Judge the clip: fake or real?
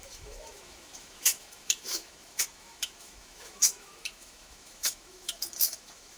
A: fake